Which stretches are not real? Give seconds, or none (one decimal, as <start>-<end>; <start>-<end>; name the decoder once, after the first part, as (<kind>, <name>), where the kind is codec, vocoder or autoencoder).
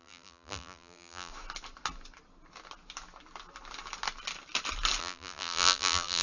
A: 0.0-1.3 (vocoder, BigVGAN v2); 5.0-6.2